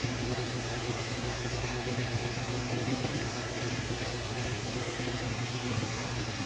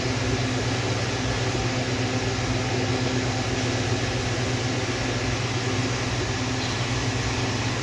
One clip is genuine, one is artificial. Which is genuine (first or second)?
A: second